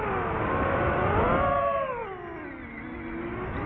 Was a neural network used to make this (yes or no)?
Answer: no